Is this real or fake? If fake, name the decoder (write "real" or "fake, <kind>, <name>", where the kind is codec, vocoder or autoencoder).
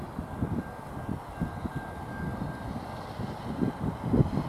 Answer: real